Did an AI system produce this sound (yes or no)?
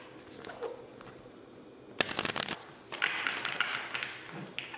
no